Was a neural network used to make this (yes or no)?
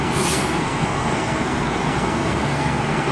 yes